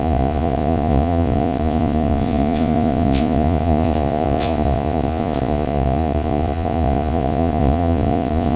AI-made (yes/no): yes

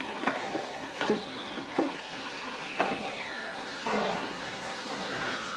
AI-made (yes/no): yes